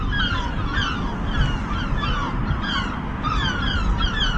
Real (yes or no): yes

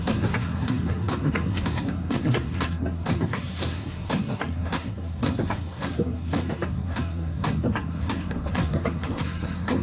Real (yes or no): no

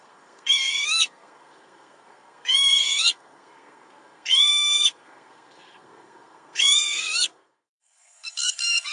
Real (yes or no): no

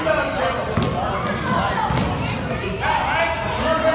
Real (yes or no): yes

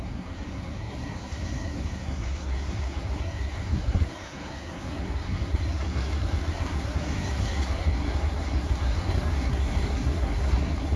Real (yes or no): no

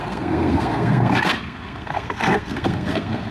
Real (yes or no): no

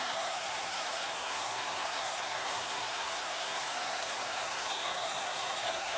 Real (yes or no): no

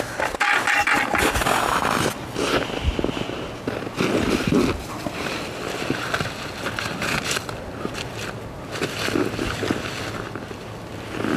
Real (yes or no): yes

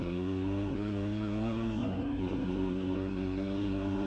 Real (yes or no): no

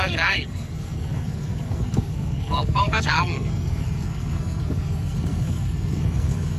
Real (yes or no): no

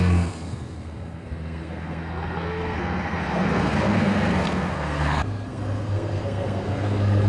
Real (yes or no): no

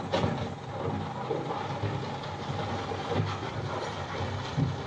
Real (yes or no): yes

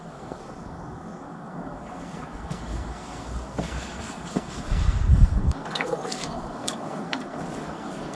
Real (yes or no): no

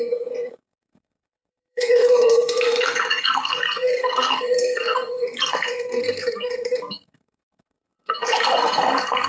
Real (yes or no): no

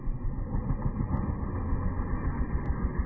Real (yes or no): yes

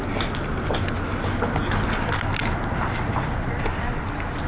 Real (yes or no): yes